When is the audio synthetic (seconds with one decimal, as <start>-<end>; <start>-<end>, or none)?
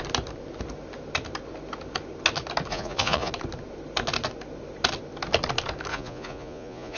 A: 2.7-3.3; 5.9-7.0